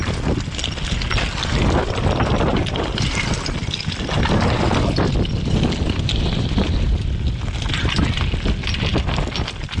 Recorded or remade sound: recorded